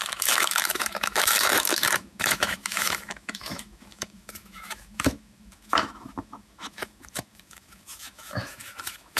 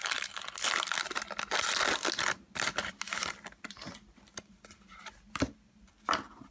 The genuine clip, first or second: second